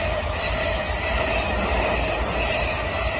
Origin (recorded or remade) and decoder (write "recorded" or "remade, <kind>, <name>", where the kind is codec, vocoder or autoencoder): recorded